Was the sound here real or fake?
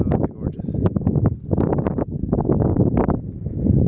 real